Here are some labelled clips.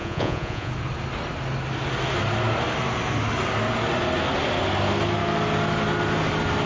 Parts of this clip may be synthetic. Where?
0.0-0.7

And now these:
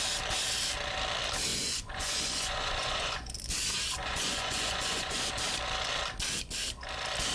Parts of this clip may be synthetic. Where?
1.5-3.3; 4.0-5.3

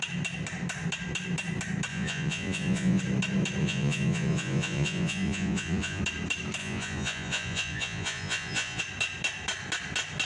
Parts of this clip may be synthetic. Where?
1.9-3.0; 3.6-6.0; 6.6-8.8